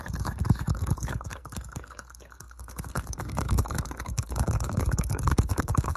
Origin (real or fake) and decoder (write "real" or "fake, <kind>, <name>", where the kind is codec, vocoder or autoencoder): fake, codec, SNAC